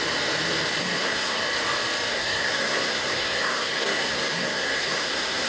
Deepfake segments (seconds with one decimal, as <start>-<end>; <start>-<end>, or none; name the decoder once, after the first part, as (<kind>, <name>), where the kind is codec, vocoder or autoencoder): 0.8-1.4 (codec, SNAC); 2.1-5.5